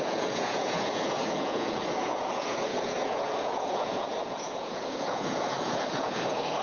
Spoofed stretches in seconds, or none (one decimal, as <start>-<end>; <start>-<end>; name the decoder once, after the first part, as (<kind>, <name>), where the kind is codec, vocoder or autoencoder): 0.0-6.6 (vocoder, Vocos)

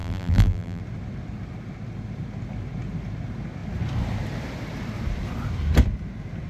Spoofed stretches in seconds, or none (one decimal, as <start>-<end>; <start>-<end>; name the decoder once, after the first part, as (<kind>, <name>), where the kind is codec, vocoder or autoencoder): 0.0-0.8 (vocoder, BigVGAN v2)

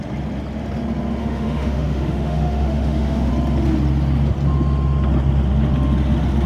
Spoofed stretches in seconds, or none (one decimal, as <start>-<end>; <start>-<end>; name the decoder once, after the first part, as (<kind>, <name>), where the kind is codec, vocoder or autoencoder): 1.2-3.3 (autoencoder, DAC-VAE)

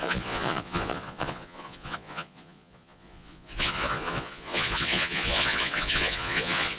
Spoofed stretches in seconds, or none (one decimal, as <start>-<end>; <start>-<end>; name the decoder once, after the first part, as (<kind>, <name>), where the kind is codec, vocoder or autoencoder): 0.0-6.8 (vocoder, Vocos)

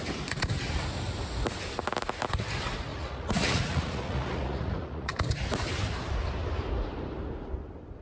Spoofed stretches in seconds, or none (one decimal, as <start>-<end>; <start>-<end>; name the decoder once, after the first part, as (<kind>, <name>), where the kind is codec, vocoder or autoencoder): 2.9-5.1 (vocoder, Vocos)